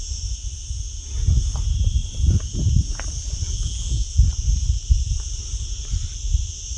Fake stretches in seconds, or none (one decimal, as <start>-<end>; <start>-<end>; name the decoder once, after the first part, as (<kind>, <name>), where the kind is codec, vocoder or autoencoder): none